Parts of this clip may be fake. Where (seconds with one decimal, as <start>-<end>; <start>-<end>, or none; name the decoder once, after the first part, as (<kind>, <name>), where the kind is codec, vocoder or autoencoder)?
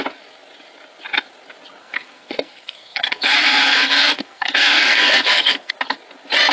1.8-5.7 (codec, SNAC)